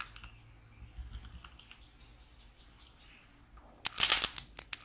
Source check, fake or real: real